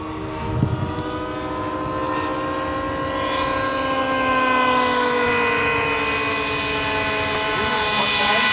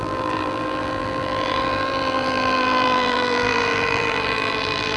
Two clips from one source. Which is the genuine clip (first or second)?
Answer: first